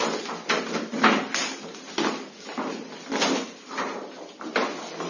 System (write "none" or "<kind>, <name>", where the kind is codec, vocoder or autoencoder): none